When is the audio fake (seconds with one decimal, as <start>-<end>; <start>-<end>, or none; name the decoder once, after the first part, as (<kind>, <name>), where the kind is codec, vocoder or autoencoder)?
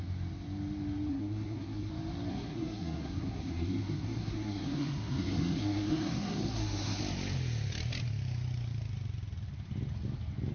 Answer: 1.1-1.9 (codec, SNAC); 2.3-7.0